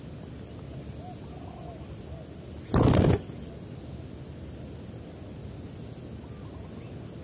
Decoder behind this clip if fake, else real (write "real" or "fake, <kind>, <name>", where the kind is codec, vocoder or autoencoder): real